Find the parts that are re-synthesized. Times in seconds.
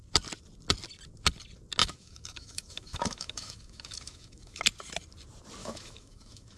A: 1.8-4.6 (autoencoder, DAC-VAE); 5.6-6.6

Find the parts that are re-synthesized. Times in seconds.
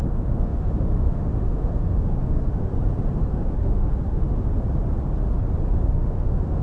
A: 0.0-2.7 (autoencoder, DAC-VAE); 3.3-4.5; 5.7-6.6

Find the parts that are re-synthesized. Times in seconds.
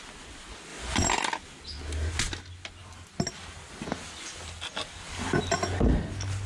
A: none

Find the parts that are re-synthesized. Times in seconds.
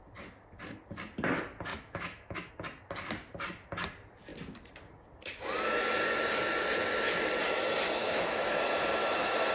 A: 1.7-2.5 (autoencoder, DAC-VAE); 8.0-8.5; 9.0-9.5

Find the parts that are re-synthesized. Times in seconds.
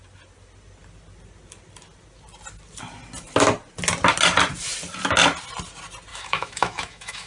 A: 6.1-7.3 (autoencoder, DAC-VAE)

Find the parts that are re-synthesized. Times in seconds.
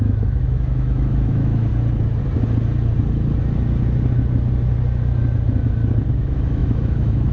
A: 0.0-1.7 (autoencoder, DAC-VAE); 6.1-7.3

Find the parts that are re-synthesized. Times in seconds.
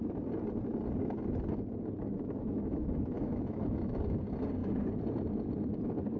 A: 2.1-4.0 (autoencoder, DAC-VAE)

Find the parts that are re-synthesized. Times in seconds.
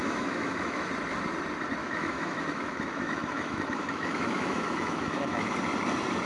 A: 0.0-0.9 (autoencoder, DAC-VAE); 1.8-5.6